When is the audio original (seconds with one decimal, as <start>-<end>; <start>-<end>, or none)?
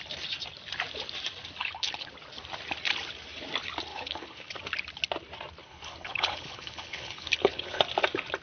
0.0-1.6; 2.1-3.9; 4.6-5.6; 7.8-8.4